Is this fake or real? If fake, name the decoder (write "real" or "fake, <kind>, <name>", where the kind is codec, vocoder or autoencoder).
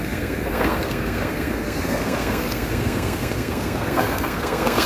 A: fake, codec, SNAC